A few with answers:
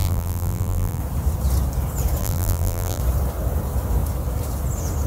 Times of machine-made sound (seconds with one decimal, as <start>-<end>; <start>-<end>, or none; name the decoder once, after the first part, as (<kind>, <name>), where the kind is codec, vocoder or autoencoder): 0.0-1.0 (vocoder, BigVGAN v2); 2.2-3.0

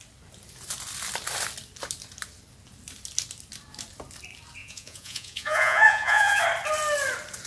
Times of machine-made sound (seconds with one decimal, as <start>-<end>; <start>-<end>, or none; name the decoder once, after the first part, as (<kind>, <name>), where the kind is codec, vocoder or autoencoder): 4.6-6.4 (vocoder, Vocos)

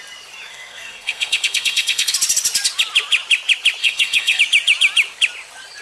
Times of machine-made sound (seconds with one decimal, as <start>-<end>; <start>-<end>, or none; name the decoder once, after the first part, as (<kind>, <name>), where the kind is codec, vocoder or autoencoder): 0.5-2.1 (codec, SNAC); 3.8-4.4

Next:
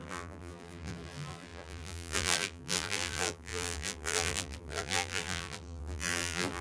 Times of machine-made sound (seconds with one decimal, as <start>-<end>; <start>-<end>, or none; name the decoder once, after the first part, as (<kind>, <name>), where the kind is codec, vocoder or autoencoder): 0.0-6.6 (vocoder, BigVGAN v2)

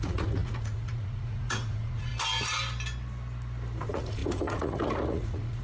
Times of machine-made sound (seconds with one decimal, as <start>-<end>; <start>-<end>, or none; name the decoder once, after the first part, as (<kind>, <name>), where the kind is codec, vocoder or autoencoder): 0.0-2.1 (vocoder, Vocos); 3.8-5.6

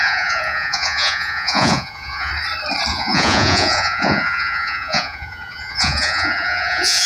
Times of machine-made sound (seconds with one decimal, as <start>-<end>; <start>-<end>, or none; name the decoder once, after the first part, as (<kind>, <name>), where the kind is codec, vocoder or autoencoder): 0.0-2.3 (vocoder, Vocos); 2.9-7.1

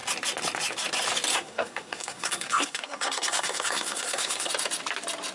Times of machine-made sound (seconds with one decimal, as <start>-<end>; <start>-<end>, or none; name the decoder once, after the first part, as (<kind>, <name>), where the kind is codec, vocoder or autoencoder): 1.3-4.5 (codec, SNAC)